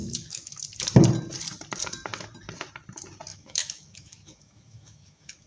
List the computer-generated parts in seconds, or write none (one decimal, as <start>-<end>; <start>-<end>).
0.0-0.6; 3.3-5.5